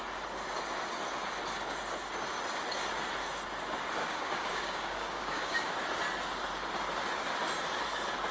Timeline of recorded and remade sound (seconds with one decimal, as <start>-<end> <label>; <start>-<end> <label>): 0.0-4.0 recorded; 4.0-5.7 remade; 5.7-8.3 recorded